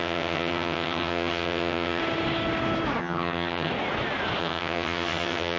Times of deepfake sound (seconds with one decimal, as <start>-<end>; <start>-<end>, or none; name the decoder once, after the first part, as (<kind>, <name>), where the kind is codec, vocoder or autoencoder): 0.0-2.0 (vocoder, HiFi-GAN); 3.0-3.7; 4.4-5.6